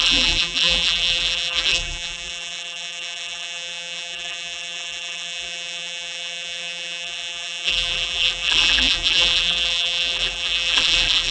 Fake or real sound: fake